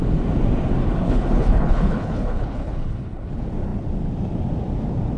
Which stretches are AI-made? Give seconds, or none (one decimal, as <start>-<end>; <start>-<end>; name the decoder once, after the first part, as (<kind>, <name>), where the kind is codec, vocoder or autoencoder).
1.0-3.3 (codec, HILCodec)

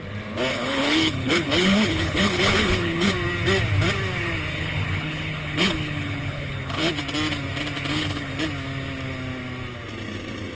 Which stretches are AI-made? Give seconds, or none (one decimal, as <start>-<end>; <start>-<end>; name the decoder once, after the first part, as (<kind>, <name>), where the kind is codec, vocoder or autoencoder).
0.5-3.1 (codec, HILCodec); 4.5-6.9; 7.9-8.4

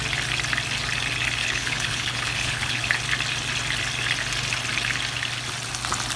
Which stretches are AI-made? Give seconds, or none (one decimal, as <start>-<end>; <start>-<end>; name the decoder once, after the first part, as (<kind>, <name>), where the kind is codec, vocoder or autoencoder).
1.4-3.0 (codec, HILCodec)

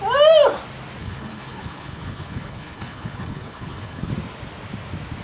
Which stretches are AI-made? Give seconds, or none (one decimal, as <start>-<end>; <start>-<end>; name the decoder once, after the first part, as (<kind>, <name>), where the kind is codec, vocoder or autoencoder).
1.0-4.1 (codec, HILCodec)

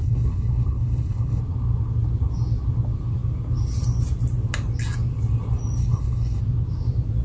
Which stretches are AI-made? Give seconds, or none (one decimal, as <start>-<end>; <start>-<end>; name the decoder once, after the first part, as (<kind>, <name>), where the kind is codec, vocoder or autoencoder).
0.0-1.4 (codec, HILCodec); 5.8-6.4

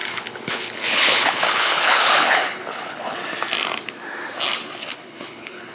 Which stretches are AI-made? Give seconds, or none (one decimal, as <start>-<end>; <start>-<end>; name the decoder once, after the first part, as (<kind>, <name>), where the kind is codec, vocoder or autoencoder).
0.0-3.2 (codec, HILCodec); 4.8-5.7